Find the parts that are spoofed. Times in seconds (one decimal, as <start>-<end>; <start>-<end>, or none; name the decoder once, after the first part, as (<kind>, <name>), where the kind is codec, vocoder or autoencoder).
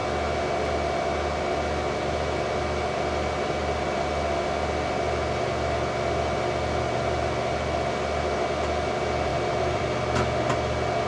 9.3-9.8 (vocoder, BigVGAN v2)